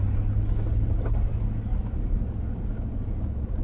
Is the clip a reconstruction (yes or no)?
no